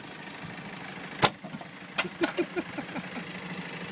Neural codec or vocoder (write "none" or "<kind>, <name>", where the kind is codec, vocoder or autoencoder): none